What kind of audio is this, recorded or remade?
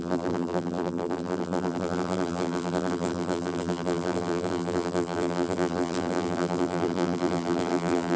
remade